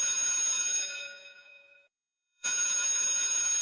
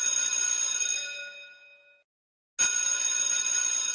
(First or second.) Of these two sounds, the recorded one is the second